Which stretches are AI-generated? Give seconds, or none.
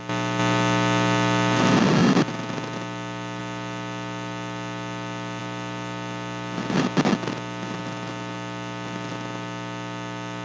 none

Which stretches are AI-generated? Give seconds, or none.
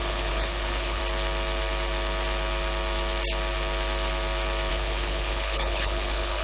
0.0-1.0 (codec, HILCodec); 4.7-6.4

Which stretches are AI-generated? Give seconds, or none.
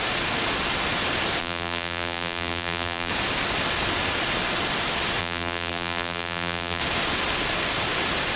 1.4-3.1 (vocoder, BigVGAN v2); 5.2-6.8